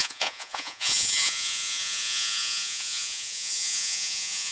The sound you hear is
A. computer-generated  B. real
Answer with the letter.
A